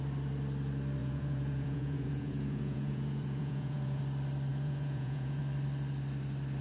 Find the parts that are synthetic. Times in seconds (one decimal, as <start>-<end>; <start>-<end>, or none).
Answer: 1.0-4.0; 4.5-5.4

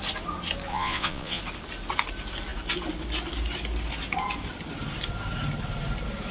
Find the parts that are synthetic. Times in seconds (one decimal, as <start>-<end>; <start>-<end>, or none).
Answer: 0.7-1.4